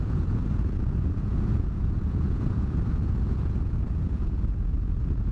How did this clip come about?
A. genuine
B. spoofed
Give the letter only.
B